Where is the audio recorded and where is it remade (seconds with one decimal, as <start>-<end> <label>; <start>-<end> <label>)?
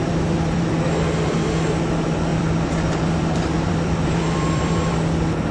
0.0-0.7 remade; 0.7-2.3 recorded; 2.3-4.9 remade; 4.9-5.5 recorded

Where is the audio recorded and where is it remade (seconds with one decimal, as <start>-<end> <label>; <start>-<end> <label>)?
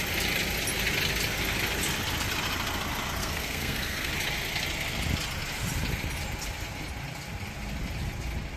0.0-3.2 recorded; 3.2-4.1 remade; 4.1-8.6 recorded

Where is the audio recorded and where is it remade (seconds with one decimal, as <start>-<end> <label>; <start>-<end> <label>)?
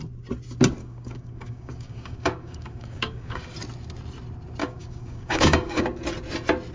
0.0-0.8 recorded; 0.8-3.4 remade; 3.4-4.6 recorded; 4.6-5.8 remade; 5.8-6.7 recorded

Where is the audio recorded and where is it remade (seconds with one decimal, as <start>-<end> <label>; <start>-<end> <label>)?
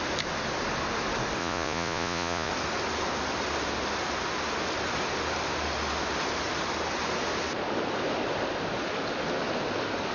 0.0-1.4 recorded; 1.4-2.5 remade; 2.5-10.1 recorded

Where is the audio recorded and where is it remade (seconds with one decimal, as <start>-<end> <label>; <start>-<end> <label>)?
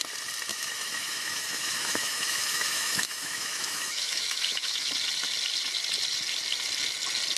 0.0-0.5 recorded; 0.5-4.9 remade; 4.9-7.4 recorded